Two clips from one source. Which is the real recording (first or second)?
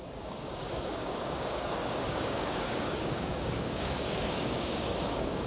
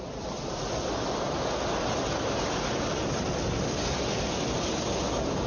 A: second